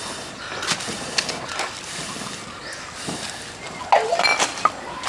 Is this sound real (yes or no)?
yes